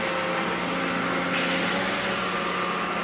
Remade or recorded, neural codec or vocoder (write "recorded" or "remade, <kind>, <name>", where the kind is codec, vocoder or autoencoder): recorded